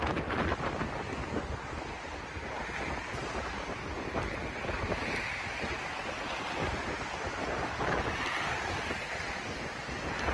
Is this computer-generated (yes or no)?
no